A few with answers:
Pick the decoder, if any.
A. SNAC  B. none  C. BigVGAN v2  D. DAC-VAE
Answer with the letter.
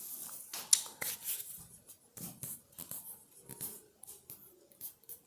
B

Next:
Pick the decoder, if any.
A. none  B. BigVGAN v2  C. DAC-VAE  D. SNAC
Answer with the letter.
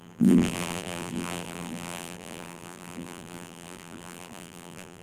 B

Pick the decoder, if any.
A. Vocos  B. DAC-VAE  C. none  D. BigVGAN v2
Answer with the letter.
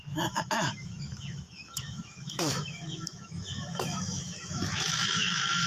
B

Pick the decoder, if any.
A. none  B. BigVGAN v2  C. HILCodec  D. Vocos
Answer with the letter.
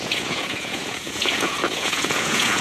D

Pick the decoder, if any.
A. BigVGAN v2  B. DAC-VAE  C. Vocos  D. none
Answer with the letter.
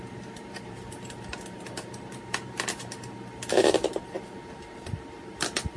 A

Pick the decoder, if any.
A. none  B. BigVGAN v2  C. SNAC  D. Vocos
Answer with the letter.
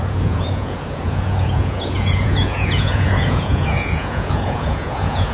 D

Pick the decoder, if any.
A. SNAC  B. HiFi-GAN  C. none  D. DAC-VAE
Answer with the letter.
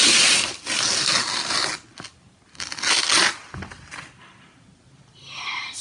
C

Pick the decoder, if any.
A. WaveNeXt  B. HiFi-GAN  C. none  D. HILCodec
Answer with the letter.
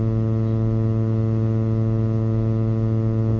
C